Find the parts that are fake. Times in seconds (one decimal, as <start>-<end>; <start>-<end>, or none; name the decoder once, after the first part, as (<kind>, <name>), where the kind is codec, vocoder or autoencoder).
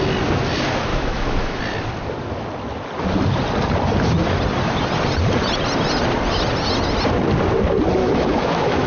0.9-1.6 (autoencoder, DAC-VAE); 8.0-8.9